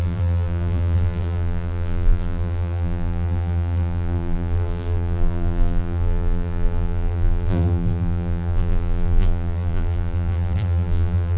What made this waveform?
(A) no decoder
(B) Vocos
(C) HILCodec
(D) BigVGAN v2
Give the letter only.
D